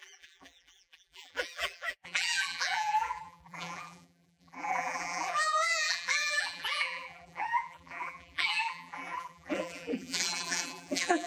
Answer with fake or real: fake